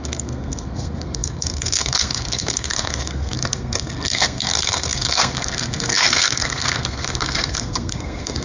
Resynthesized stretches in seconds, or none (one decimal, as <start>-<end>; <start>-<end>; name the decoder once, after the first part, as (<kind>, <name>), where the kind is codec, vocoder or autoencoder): 0.0-8.4 (codec, SNAC)